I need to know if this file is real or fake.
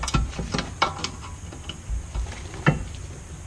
real